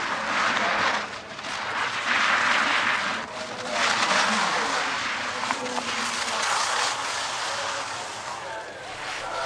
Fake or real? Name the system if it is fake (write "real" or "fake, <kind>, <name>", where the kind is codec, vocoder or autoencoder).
real